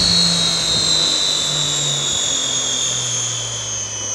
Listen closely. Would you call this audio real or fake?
real